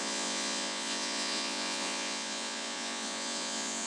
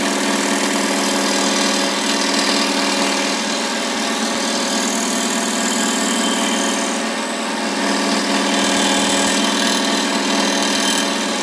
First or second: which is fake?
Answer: first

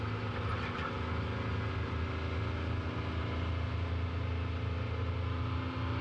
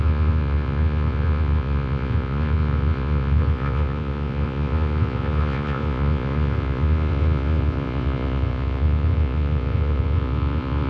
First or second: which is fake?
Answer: second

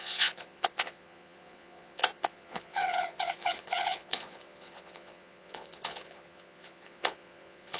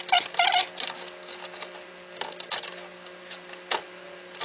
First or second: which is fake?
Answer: first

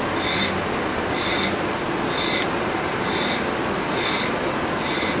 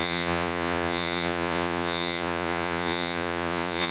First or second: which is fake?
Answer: second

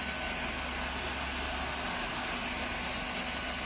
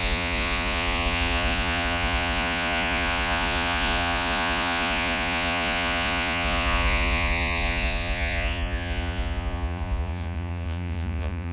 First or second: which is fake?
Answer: second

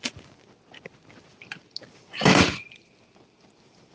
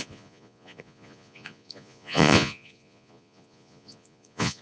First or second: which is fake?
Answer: second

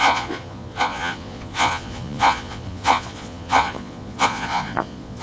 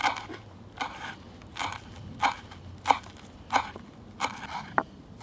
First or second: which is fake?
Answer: first